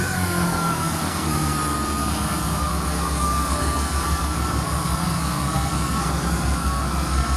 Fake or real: fake